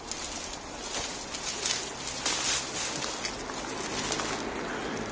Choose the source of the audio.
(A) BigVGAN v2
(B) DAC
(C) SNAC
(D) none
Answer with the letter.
D